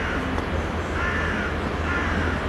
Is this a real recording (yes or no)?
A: yes